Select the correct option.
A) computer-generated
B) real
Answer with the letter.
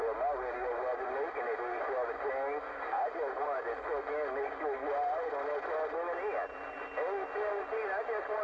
B